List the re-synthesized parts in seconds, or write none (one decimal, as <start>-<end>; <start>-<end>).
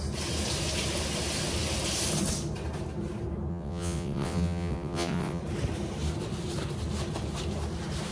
3.5-5.4